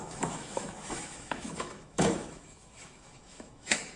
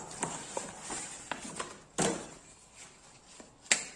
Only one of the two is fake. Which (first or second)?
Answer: first